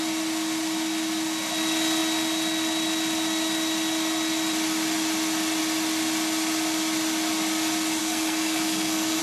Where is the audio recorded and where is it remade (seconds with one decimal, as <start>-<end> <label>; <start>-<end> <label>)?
0.0-8.0 recorded; 8.0-9.2 remade